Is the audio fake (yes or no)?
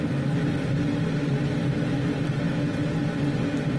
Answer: no